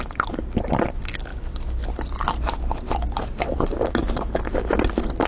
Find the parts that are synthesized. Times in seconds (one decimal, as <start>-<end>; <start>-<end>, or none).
none